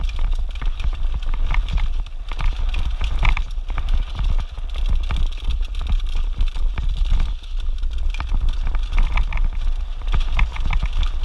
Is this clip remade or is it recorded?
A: recorded